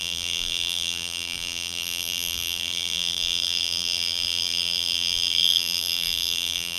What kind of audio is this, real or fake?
fake